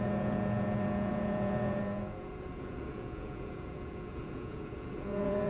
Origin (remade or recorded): remade